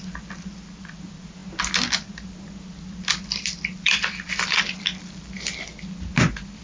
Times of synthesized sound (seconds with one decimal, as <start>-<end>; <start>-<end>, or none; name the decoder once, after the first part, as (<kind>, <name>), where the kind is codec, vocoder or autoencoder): none

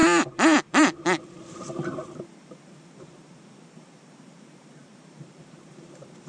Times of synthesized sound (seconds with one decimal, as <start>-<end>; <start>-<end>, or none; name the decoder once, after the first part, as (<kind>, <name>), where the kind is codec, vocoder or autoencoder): 0.0-6.3 (vocoder, BigVGAN v2)

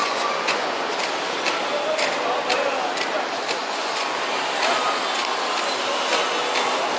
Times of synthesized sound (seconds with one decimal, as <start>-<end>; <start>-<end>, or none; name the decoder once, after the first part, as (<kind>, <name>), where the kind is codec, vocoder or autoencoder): 0.0-0.9 (vocoder, Vocos); 3.6-4.4

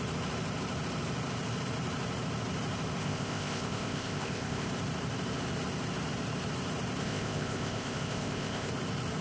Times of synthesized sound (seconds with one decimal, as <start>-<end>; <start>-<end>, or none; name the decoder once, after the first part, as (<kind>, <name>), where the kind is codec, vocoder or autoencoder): 3.0-4.7 (codec, ZipCodec); 7.0-8.7

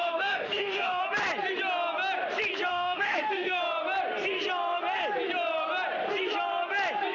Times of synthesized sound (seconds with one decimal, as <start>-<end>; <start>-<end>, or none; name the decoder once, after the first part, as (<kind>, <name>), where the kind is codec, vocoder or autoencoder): 0.0-1.0 (autoencoder, DAC-VAE); 2.7-3.6

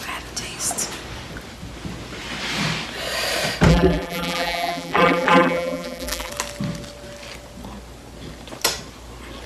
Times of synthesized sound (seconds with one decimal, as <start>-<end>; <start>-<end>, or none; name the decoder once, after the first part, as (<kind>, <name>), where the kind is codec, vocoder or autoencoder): 3.7-6.3 (vocoder, BigVGAN v2)

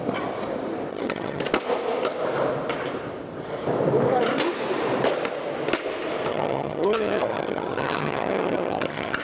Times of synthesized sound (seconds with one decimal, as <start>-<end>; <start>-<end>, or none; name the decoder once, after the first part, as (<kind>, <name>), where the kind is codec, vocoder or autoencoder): 0.9-1.4 (vocoder, HiFi-GAN); 6.3-9.2